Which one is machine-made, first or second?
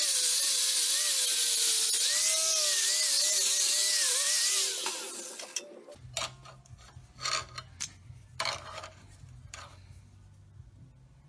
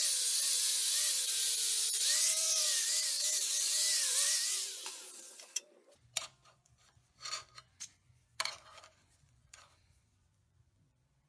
second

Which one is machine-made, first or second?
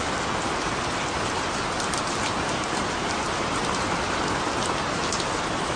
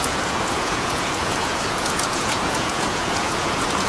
second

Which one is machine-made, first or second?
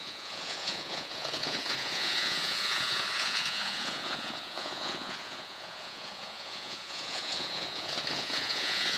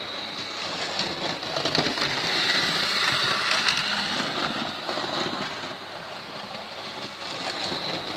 first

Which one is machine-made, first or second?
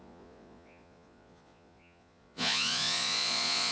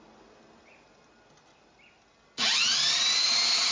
first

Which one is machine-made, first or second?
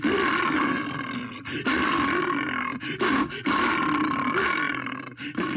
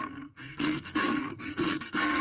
second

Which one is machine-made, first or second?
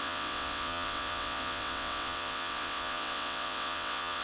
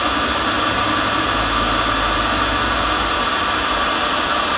first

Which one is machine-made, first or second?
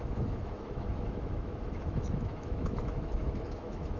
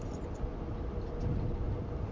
first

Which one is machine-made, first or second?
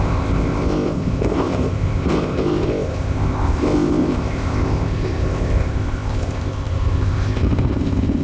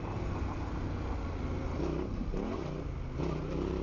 first